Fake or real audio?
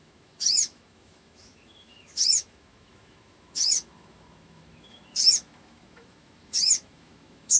fake